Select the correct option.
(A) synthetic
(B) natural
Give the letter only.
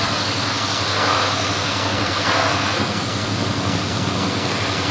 A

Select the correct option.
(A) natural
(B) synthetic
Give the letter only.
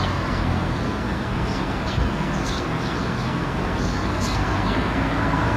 B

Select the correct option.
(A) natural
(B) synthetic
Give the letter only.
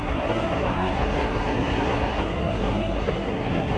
B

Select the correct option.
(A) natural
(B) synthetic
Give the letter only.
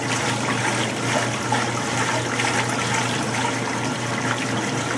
A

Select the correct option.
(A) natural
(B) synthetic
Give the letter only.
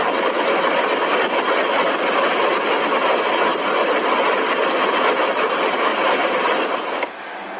A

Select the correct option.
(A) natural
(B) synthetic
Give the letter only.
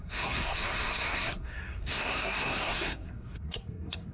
B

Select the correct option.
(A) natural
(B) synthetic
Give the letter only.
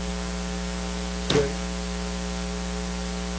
A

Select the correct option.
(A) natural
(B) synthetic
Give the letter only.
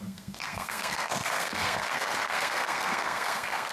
B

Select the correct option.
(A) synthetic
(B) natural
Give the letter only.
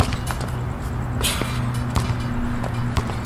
B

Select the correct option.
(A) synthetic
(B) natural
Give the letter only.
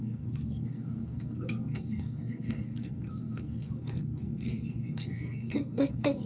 A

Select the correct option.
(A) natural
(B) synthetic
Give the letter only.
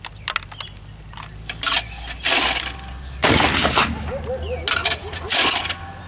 A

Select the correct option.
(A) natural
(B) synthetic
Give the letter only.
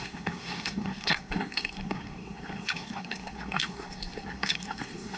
B